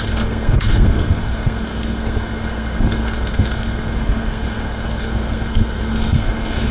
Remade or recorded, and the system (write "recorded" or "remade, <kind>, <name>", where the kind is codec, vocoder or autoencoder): remade, codec, SNAC